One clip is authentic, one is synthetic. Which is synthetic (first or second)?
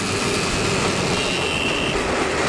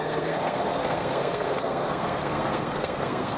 second